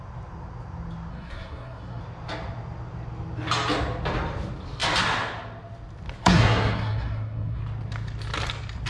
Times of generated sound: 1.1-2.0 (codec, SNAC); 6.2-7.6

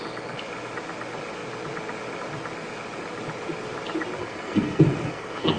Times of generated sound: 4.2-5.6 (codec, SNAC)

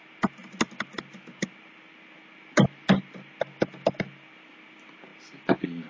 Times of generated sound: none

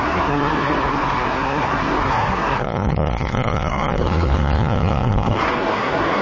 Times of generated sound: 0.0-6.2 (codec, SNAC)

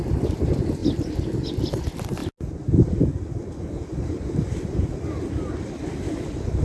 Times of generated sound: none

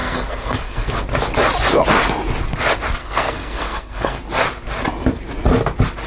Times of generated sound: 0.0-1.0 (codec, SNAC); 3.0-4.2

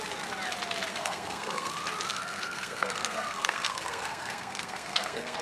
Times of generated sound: 0.9-1.7 (codec, SNAC); 2.1-5.4